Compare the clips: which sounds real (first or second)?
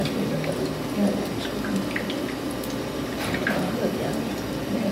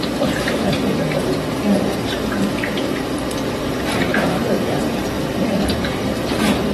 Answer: first